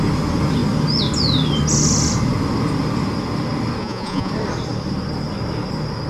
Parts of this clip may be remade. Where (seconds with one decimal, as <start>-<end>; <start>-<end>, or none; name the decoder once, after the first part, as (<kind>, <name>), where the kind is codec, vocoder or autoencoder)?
3.8-4.3 (vocoder, Vocos)